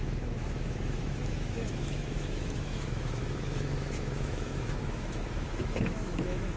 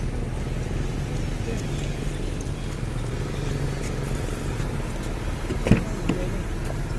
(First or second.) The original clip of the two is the second